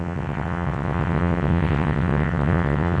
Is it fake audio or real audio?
fake